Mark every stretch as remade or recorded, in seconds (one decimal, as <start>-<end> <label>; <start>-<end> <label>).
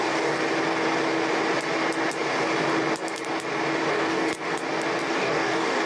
0.0-0.4 remade; 0.4-3.9 recorded; 3.9-4.3 remade; 4.3-5.0 recorded; 5.0-5.9 remade